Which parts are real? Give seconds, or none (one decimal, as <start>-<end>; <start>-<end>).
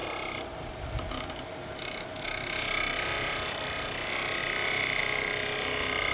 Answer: 0.0-6.1